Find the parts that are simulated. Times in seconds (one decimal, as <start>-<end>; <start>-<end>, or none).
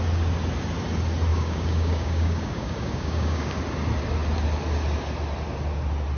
1.3-3.6